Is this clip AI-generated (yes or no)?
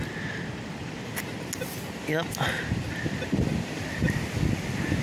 no